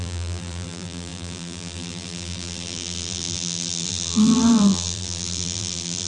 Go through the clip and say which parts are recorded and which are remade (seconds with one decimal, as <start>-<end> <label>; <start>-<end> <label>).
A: 0.0-6.1 remade